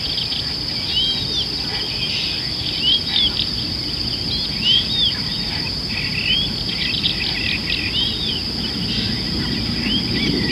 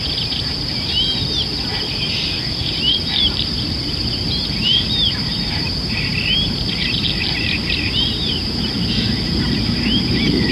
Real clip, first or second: first